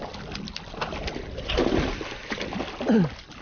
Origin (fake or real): real